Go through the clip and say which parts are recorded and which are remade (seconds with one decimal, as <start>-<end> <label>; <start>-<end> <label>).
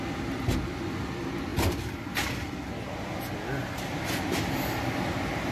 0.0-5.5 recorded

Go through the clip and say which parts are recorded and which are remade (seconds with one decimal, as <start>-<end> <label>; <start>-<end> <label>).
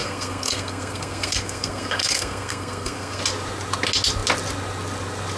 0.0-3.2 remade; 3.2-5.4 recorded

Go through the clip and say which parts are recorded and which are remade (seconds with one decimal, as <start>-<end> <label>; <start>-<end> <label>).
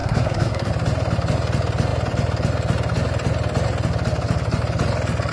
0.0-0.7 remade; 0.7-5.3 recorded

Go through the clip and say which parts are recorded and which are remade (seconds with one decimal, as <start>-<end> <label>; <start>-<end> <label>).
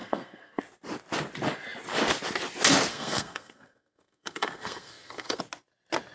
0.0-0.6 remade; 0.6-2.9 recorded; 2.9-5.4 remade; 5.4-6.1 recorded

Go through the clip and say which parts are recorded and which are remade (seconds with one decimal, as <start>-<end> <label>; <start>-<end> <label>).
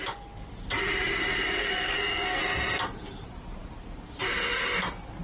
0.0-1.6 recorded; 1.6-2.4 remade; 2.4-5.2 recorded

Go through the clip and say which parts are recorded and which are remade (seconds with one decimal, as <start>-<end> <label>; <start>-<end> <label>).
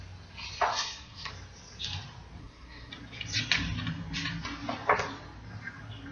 0.0-0.7 recorded; 0.7-1.3 remade; 1.3-2.4 recorded; 2.4-2.9 remade; 2.9-6.1 recorded